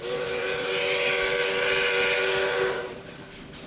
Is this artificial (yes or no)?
no